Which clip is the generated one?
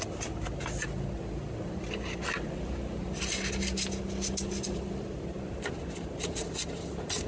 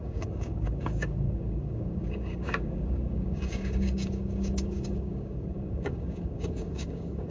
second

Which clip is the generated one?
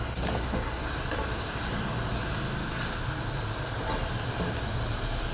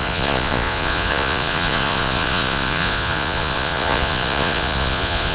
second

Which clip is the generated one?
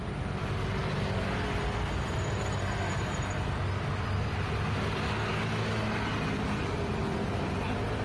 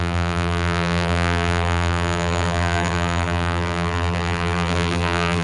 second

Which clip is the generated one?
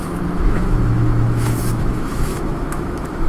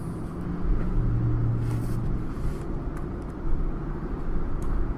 first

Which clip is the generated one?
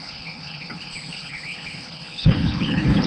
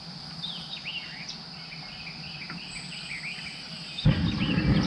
first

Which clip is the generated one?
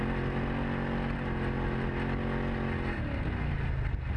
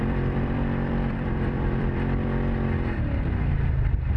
second